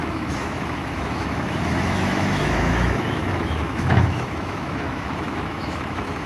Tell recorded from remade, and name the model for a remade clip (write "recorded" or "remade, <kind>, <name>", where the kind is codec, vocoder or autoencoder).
remade, autoencoder, DAC-VAE